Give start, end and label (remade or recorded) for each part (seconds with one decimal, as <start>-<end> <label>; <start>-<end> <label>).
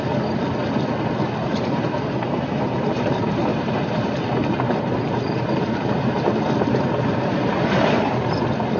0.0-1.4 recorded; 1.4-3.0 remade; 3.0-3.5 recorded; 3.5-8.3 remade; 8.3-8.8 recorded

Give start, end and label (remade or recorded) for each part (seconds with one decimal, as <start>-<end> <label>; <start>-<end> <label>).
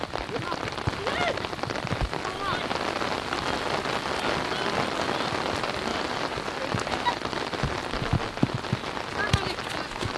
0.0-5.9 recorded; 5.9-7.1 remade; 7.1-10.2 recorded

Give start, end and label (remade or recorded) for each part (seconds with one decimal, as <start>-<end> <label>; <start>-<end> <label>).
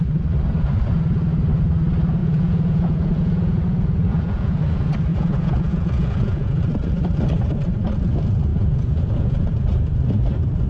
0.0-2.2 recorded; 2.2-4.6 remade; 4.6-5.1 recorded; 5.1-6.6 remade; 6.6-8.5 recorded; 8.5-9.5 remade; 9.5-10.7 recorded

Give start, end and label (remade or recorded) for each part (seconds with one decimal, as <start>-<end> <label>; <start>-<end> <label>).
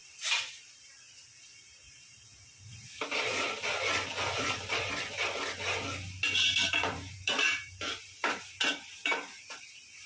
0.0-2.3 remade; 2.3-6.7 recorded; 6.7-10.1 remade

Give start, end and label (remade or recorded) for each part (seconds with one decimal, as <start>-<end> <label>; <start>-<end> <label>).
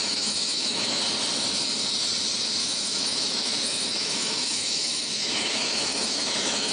0.0-1.0 remade; 1.0-2.6 recorded; 2.6-6.7 remade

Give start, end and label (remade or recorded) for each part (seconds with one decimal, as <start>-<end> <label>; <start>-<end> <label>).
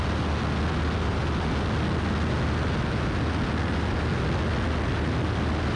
0.0-5.8 recorded